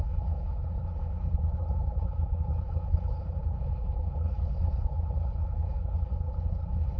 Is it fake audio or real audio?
fake